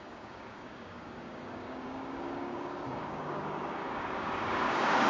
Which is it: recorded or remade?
remade